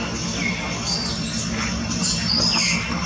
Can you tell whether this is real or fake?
real